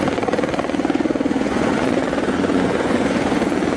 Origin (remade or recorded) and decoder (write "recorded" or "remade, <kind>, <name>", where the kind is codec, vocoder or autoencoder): remade, vocoder, Vocos